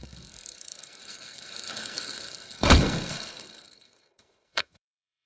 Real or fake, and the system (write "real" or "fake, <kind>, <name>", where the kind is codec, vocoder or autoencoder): fake, codec, SNAC